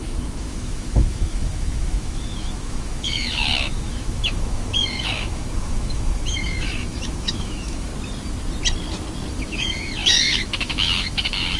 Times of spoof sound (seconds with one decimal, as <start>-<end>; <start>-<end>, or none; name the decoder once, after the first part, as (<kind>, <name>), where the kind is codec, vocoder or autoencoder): 0.0-7.9 (autoencoder, DAC-VAE); 9.3-11.6